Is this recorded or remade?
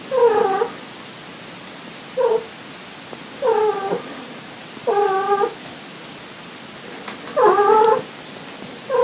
recorded